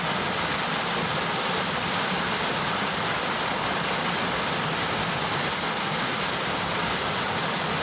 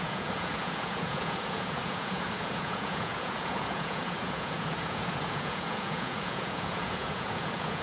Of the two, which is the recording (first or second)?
first